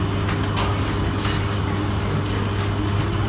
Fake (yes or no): no